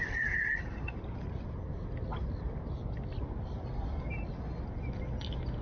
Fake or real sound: real